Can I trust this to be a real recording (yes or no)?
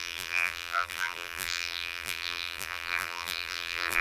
no